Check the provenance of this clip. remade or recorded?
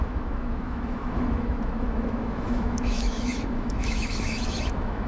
remade